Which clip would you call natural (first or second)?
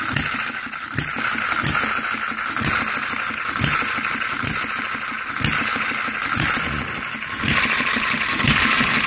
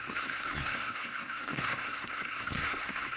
first